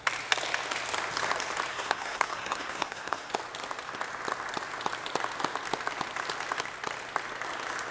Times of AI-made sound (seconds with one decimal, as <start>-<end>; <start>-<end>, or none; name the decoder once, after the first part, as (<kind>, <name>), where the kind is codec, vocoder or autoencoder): 1.7-3.3 (codec, SNAC)